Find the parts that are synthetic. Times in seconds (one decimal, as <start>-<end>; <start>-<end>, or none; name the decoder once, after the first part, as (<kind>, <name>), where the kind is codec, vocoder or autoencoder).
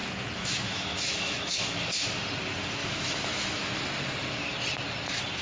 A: 0.0-1.9 (autoencoder, DAC-VAE); 2.8-3.8